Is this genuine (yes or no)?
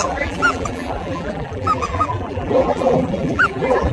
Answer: no